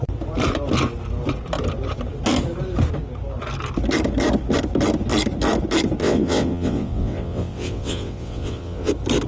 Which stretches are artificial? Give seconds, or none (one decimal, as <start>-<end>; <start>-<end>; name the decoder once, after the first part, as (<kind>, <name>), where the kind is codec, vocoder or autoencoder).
6.0-8.9 (vocoder, WaveNeXt)